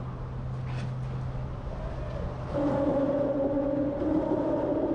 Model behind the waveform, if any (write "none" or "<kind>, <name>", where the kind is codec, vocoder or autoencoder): none